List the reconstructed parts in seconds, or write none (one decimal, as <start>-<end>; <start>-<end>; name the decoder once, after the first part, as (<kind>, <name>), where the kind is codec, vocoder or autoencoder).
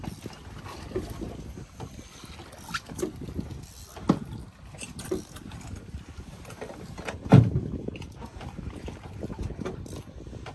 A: none